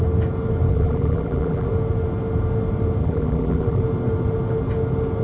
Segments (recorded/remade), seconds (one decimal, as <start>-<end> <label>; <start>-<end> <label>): 0.0-0.7 recorded; 0.7-1.7 remade; 1.7-3.0 recorded; 3.0-3.8 remade; 3.8-5.2 recorded